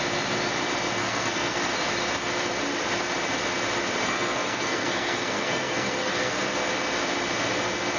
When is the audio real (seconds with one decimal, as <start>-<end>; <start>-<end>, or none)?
0.0-1.0; 1.7-4.0; 6.4-8.0